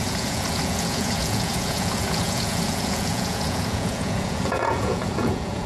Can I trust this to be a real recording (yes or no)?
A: no